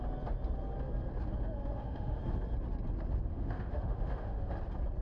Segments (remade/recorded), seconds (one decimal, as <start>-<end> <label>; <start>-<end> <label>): 0.0-1.7 recorded; 1.7-2.2 remade; 2.2-3.3 recorded; 3.3-4.5 remade; 4.5-5.0 recorded